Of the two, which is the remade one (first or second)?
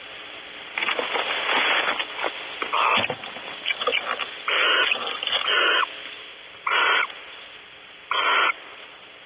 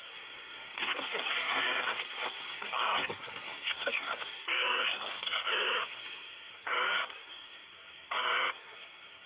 second